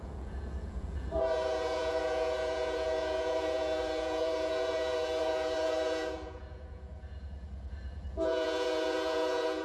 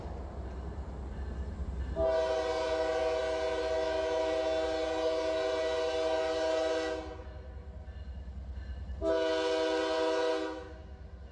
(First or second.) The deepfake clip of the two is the first